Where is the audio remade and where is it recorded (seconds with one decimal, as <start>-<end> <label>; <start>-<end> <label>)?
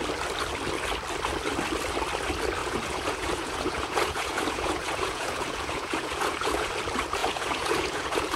0.0-2.6 recorded; 2.6-6.7 remade; 6.7-7.2 recorded; 7.2-8.4 remade